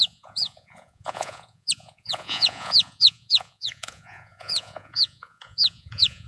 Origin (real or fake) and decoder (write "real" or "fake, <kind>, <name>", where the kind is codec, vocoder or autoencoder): fake, vocoder, Vocos